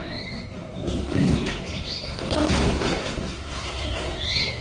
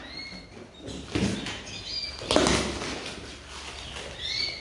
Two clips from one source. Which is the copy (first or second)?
first